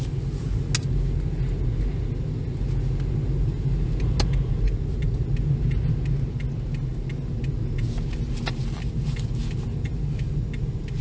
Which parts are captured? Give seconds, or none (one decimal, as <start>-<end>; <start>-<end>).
0.0-11.0